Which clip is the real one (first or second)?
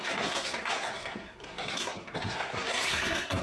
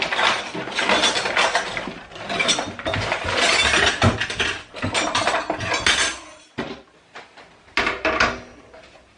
second